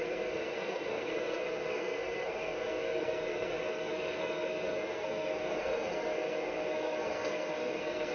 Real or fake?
fake